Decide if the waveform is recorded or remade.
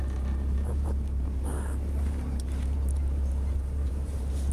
remade